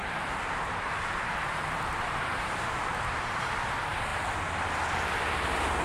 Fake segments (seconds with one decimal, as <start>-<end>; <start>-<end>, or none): 0.0-3.5